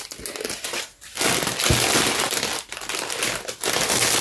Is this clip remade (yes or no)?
no